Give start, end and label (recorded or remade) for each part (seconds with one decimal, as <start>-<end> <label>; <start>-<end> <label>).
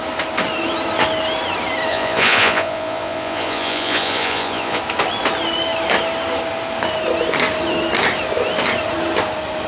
0.0-1.9 recorded; 1.9-4.8 remade; 4.8-9.7 recorded